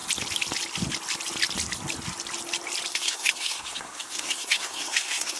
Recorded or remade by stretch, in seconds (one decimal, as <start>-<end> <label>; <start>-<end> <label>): 0.0-2.9 recorded; 2.9-5.4 remade